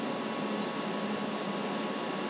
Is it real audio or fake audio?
real